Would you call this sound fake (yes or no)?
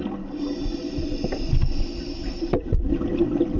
no